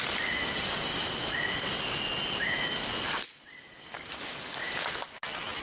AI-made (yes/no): no